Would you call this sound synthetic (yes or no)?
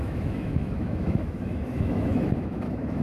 yes